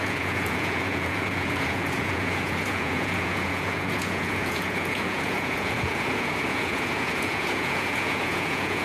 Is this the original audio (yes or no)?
no